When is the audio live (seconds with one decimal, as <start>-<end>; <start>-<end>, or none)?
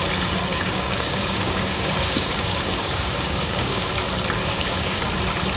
0.0-0.5; 3.9-4.4; 5.0-5.6